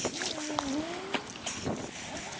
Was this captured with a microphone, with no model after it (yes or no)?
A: yes